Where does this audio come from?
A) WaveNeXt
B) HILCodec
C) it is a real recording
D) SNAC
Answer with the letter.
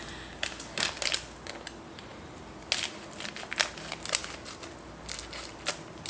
C